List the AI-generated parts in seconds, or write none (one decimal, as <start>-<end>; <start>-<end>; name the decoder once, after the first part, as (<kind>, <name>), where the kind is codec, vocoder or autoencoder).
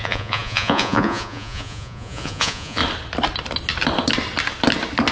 0.0-2.8 (vocoder, Vocos)